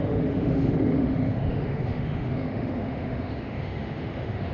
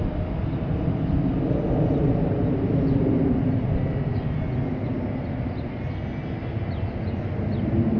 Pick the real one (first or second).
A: second